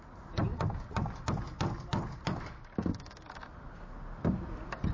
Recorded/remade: recorded